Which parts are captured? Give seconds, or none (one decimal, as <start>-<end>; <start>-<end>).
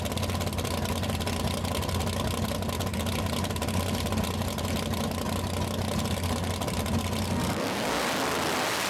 0.0-7.4; 8.1-8.9